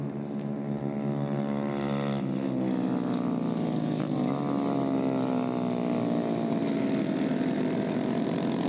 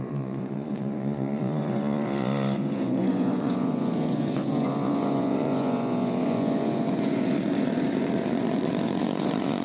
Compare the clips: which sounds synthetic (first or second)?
second